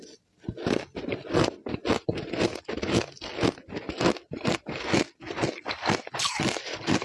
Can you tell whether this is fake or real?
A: real